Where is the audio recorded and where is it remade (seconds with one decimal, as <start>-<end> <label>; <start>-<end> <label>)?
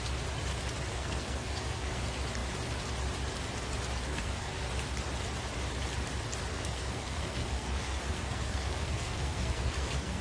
0.0-0.9 recorded; 0.9-2.0 remade; 2.0-4.1 recorded; 4.1-4.7 remade; 4.7-6.5 recorded; 6.5-10.2 remade